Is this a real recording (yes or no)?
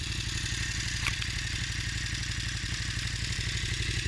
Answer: no